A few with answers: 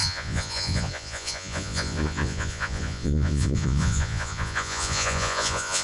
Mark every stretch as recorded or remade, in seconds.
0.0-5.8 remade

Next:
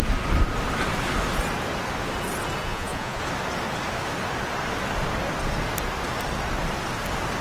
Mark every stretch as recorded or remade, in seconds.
0.0-2.6 recorded; 2.6-3.2 remade; 3.2-7.4 recorded

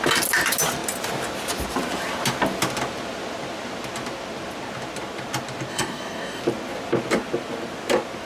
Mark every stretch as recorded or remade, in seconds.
0.0-5.7 recorded; 5.7-6.4 remade; 6.4-8.3 recorded

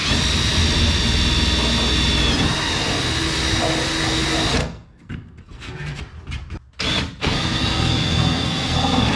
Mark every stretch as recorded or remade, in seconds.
0.0-4.6 recorded; 4.6-6.0 remade; 6.0-7.2 recorded; 7.2-9.2 remade

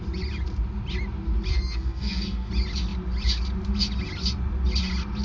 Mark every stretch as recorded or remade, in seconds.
0.0-1.5 recorded; 1.5-2.5 remade; 2.5-5.2 recorded

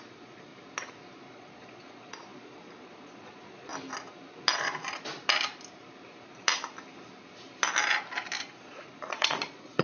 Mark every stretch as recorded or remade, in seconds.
0.0-0.5 remade; 0.5-1.2 recorded; 1.2-3.7 remade; 3.7-8.4 recorded; 8.4-9.8 remade

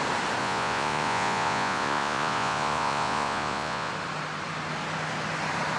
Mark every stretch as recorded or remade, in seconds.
0.0-0.4 recorded; 0.4-3.9 remade; 3.9-5.8 recorded

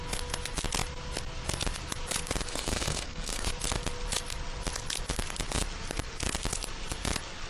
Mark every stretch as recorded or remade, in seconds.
0.0-2.5 recorded; 2.5-3.5 remade; 3.5-7.5 recorded